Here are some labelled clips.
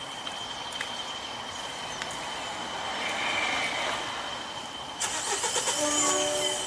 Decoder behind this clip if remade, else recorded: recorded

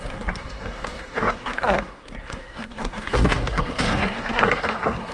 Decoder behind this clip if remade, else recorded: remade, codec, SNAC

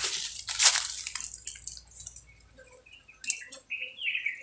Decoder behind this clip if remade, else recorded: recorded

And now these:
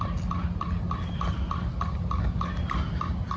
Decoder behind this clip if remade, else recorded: recorded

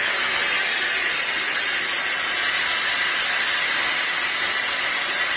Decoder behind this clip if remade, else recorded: recorded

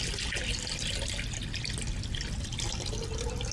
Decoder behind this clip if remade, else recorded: recorded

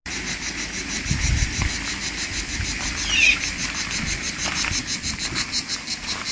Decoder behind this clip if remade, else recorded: recorded